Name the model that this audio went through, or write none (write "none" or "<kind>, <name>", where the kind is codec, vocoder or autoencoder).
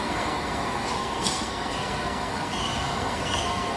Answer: codec, SNAC